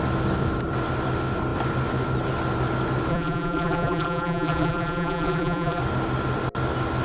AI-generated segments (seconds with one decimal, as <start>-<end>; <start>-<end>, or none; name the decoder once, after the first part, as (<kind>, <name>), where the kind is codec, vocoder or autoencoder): 3.1-5.8 (vocoder, BigVGAN v2)